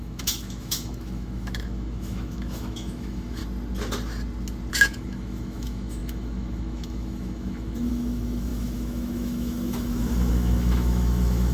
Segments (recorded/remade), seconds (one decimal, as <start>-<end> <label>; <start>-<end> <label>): 0.0-3.4 remade; 3.4-4.7 recorded; 4.7-11.5 remade

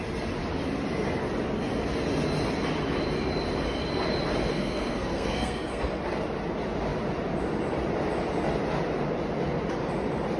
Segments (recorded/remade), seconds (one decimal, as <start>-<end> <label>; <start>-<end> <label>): 0.0-4.5 recorded; 4.5-6.0 remade; 6.0-10.4 recorded

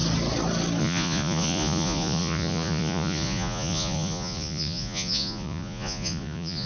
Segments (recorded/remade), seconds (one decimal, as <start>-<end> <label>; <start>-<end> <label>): 0.0-0.8 recorded; 0.8-6.7 remade